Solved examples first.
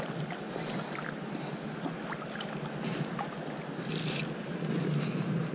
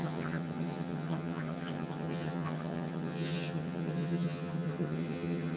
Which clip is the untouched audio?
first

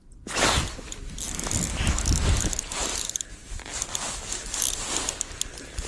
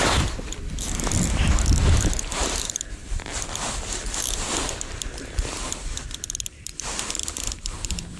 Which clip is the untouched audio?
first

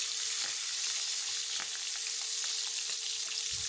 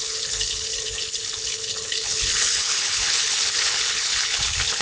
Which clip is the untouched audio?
first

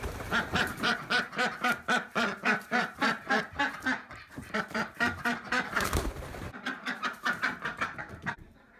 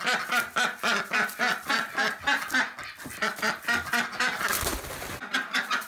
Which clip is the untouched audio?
second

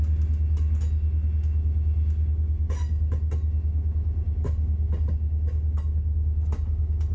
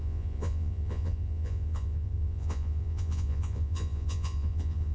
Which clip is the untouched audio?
first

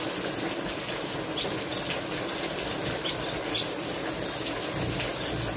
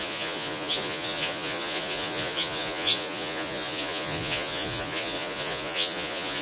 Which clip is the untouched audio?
first